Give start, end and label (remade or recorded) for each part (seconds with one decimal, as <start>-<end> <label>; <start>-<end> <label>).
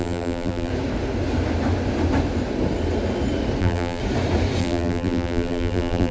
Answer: 0.0-0.7 remade; 0.7-3.6 recorded; 3.6-4.0 remade; 4.0-4.6 recorded; 4.6-6.1 remade